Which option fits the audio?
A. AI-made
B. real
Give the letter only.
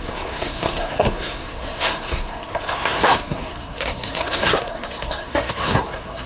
A